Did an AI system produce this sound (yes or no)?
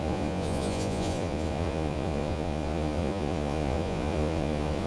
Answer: yes